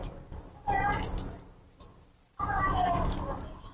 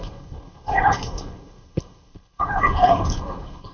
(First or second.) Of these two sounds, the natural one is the first